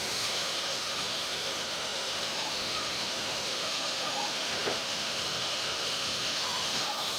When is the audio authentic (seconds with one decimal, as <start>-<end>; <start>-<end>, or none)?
none